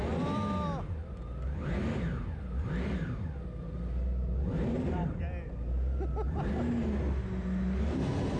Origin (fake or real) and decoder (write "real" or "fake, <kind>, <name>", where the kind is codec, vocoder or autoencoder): real